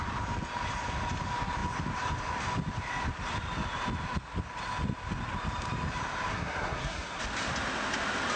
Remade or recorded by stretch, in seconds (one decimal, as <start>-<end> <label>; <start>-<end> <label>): 0.0-6.3 recorded; 6.3-7.2 remade; 7.2-8.4 recorded